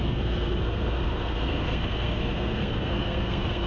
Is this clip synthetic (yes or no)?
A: yes